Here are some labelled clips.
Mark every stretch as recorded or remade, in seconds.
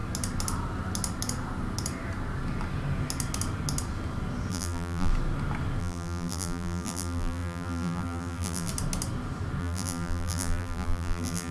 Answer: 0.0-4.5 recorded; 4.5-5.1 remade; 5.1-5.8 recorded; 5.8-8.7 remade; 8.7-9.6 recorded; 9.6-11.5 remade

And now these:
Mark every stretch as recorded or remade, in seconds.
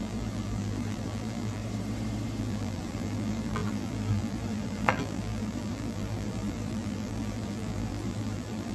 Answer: 0.0-1.6 remade; 1.6-2.4 recorded; 2.4-8.7 remade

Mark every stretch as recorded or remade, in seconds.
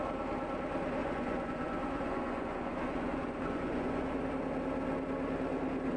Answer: 0.0-1.0 recorded; 1.0-4.2 remade; 4.2-6.0 recorded